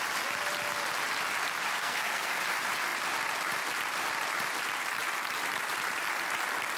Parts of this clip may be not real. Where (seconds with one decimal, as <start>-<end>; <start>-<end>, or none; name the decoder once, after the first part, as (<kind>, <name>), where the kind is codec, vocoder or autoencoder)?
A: 1.7-2.4 (codec, SNAC)